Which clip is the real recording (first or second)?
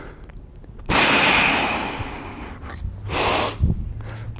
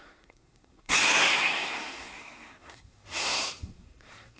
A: first